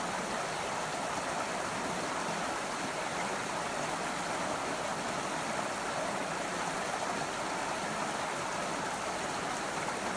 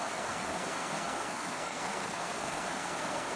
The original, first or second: first